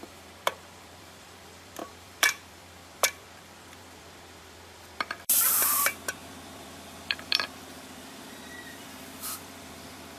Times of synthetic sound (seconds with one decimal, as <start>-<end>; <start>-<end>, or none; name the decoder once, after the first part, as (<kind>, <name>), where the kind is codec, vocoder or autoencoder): 0.0-10.2 (vocoder, BigVGAN v2)